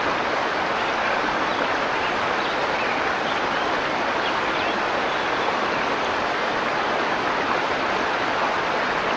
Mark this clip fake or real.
real